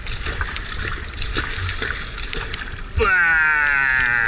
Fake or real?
real